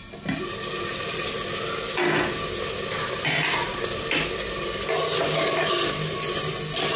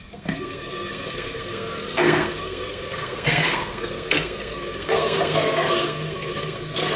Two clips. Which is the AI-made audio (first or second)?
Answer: second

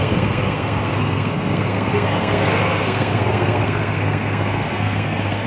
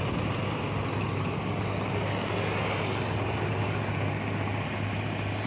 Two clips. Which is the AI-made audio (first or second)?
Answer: first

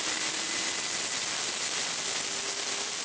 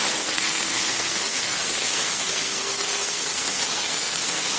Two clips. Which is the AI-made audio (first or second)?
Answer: second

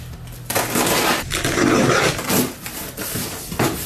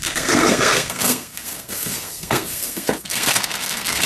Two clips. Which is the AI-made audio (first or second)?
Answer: second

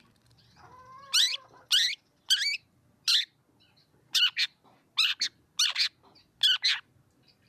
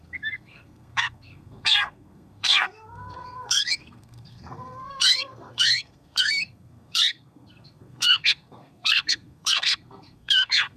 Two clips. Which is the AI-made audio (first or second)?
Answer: second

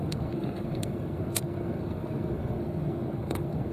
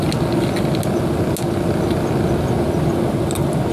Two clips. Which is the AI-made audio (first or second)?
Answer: first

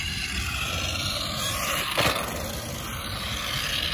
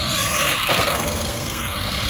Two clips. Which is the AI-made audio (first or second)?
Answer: second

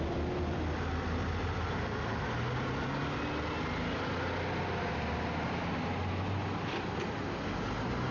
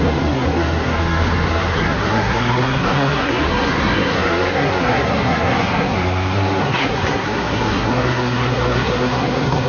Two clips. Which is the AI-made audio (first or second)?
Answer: second